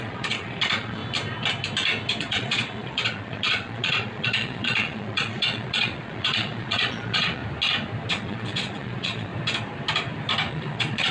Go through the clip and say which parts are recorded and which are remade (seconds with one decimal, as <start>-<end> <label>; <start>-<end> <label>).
0.0-1.0 remade; 1.0-2.2 recorded; 2.2-7.4 remade; 7.4-8.1 recorded; 8.1-9.3 remade; 9.3-10.5 recorded; 10.5-11.1 remade